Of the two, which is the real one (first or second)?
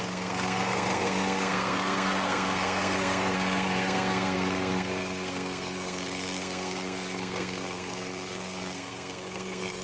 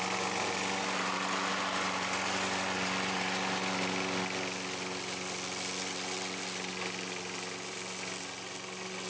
second